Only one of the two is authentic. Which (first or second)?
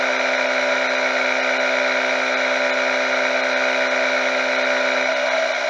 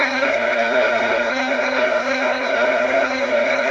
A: first